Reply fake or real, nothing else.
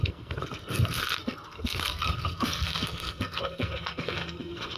fake